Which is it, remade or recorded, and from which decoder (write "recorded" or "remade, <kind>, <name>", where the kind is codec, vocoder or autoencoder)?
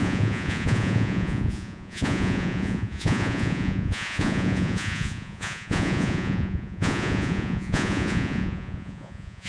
remade, vocoder, Vocos